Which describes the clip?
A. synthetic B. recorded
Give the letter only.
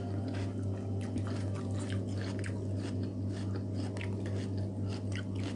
B